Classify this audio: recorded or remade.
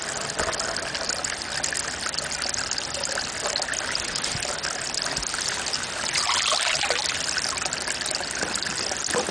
recorded